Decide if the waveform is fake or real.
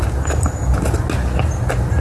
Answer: real